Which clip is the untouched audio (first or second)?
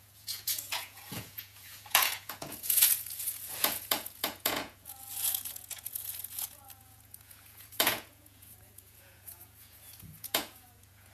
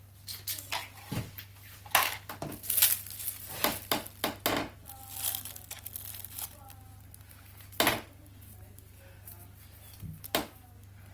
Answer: second